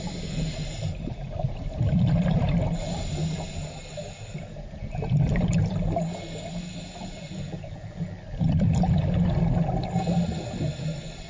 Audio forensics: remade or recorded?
recorded